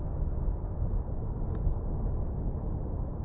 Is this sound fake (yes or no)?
yes